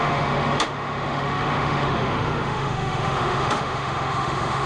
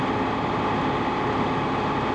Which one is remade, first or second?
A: first